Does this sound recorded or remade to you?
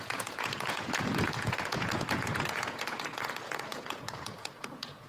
remade